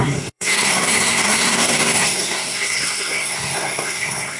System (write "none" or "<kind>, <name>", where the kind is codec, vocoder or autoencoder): codec, SNAC